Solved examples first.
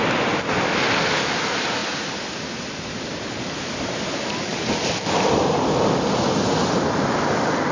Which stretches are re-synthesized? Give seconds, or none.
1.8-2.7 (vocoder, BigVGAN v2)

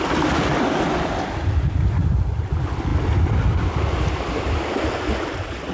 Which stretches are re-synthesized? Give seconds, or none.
none

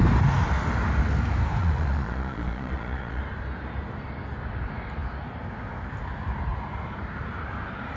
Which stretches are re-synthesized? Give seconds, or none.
1.6-3.2 (vocoder, Vocos)

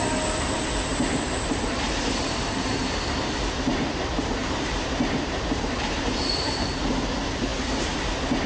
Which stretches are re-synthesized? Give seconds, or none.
0.9-2.7 (vocoder, BigVGAN v2); 4.4-6.8

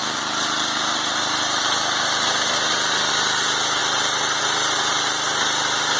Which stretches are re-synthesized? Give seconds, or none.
none

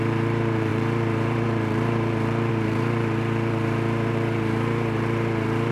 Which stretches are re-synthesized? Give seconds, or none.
0.0-5.7 (vocoder, BigVGAN v2)

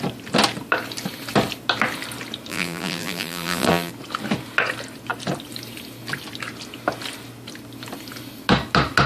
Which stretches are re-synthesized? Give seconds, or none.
2.5-3.9 (vocoder, BigVGAN v2)

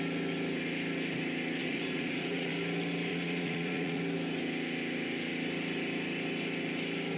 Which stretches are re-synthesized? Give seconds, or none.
1.6-2.5 (vocoder, Vocos); 3.1-4.0